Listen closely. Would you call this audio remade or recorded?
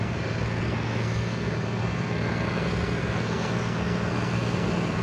remade